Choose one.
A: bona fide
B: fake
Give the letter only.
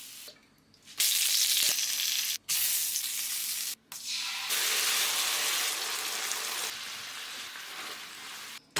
A